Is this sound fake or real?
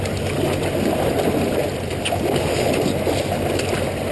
real